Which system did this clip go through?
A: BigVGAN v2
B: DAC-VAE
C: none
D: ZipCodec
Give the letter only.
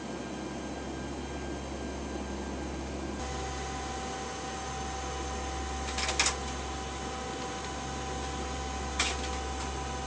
C